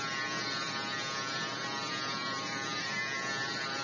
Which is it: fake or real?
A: fake